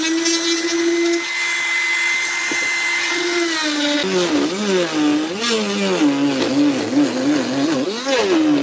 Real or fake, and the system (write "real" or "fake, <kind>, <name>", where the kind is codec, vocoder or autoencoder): real